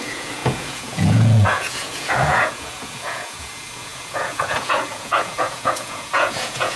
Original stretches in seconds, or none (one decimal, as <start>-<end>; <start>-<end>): none